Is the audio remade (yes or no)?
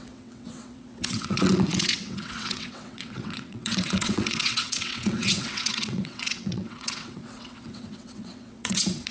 yes